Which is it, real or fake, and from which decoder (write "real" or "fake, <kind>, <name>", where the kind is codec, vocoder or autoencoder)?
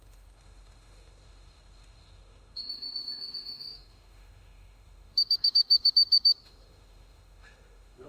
fake, autoencoder, DAC-VAE